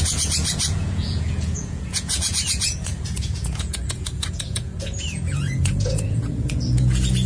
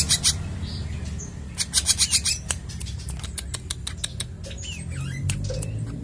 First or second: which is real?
second